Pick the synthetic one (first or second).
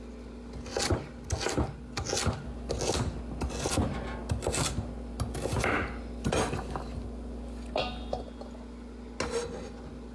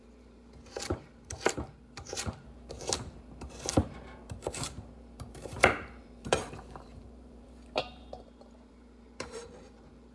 second